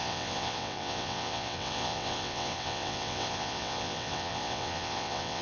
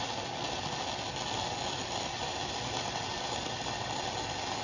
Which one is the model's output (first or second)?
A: first